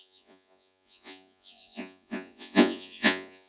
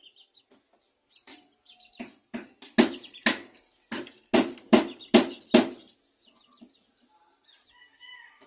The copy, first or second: first